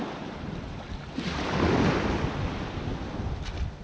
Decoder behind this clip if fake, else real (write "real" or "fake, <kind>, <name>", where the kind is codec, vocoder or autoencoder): real